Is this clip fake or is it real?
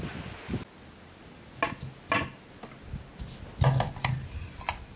real